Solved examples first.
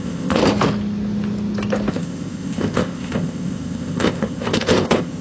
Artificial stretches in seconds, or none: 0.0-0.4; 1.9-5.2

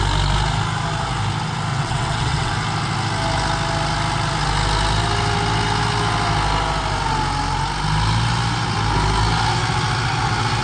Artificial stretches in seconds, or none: 1.7-2.5

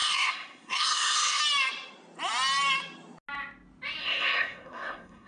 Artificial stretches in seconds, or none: 0.0-1.4; 4.0-5.3

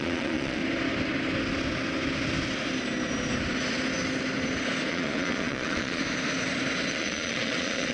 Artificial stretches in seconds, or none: 0.0-0.6; 4.9-6.0; 6.9-7.9